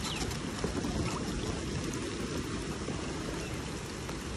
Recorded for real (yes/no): yes